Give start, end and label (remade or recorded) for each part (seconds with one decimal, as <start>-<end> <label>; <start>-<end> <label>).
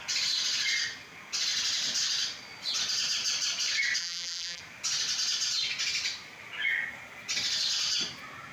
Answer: 0.0-4.0 recorded; 4.0-4.6 remade; 4.6-8.5 recorded